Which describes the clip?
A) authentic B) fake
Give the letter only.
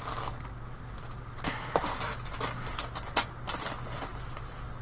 A